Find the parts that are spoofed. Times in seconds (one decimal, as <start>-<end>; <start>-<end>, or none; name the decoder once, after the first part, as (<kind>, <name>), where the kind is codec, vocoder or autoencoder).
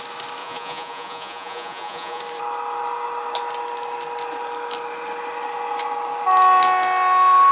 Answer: 0.4-2.2 (vocoder, Vocos)